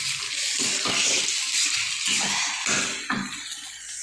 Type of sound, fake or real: real